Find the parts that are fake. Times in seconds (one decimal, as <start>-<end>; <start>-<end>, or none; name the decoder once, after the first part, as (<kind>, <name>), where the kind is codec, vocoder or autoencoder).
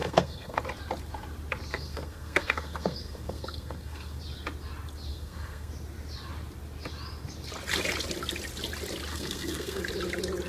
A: 0.0-0.6 (codec, SNAC); 1.7-4.2; 5.1-5.7; 9.1-9.8